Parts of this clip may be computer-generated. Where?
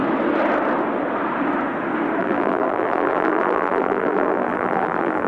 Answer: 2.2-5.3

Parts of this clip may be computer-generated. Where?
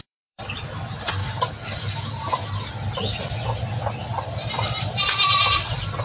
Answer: 0.0-1.2; 4.8-6.0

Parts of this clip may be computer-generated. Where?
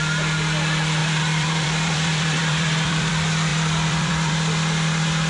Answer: 1.0-3.1; 3.5-4.3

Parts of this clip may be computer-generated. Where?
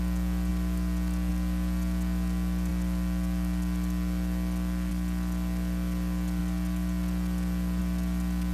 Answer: none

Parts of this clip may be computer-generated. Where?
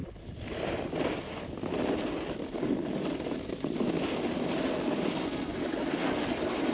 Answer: none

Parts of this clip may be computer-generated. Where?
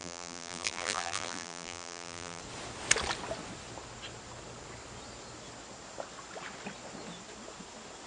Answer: 0.0-2.4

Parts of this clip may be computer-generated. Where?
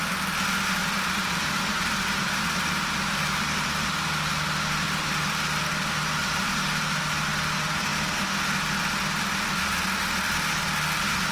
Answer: 0.8-3.8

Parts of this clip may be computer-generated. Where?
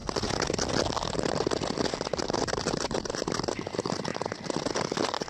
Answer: 2.4-4.1